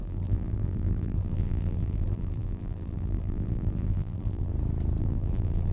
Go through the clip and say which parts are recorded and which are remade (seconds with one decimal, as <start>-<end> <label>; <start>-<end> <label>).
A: 0.0-4.5 remade; 4.5-5.0 recorded; 5.0-5.7 remade